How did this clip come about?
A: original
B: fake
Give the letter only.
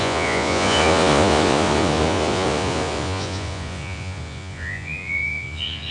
B